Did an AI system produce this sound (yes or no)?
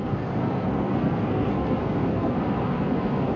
yes